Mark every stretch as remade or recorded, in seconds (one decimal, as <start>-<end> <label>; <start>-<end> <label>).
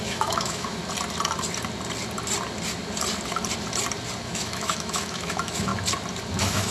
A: 0.0-0.8 remade; 0.8-4.2 recorded; 4.2-5.7 remade; 5.7-6.3 recorded; 6.3-6.7 remade